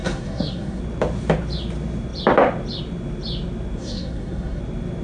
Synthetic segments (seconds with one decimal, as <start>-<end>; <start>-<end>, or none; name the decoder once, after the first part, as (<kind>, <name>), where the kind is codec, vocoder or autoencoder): 0.0-0.8 (codec, SNAC); 3.8-4.6